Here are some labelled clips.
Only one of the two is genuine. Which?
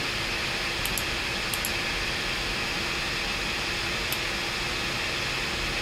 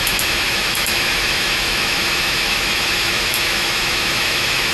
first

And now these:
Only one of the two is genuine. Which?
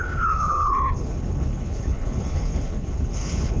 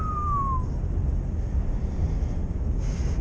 second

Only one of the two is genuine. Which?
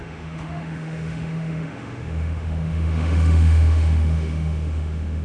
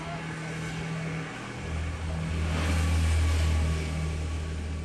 second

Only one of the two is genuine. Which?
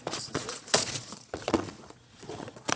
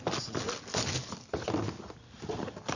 second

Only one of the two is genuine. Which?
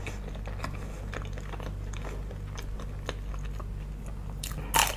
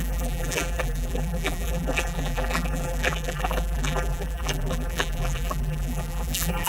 first